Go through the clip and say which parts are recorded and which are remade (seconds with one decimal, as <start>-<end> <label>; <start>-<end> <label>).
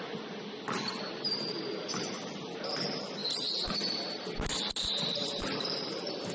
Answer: 0.0-6.3 recorded